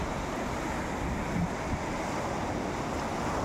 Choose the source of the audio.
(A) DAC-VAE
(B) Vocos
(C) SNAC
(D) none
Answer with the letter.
D